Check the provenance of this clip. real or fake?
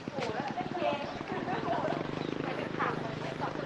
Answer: fake